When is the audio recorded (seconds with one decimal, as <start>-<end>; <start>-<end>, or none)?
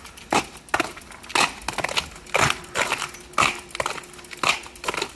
0.0-5.1